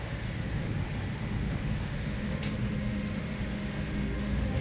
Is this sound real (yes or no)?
no